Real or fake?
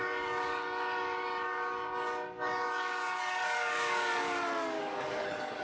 fake